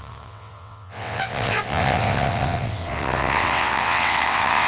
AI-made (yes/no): yes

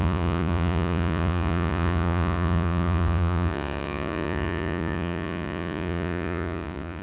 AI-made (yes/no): yes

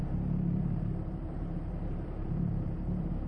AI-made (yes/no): yes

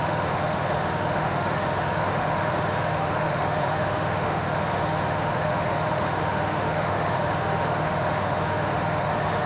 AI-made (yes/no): yes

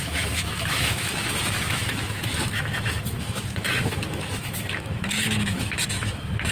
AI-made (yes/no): yes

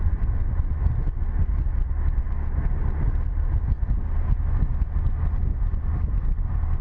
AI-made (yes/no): no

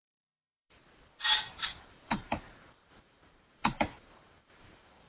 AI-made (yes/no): yes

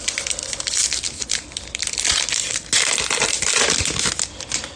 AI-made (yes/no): no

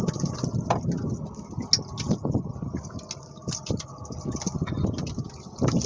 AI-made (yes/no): no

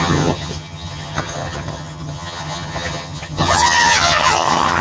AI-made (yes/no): yes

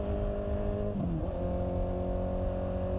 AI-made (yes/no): no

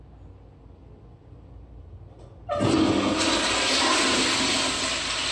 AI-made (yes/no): no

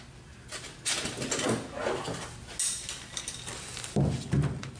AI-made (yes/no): no